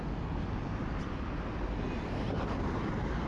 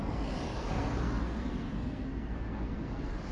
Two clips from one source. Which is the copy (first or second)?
second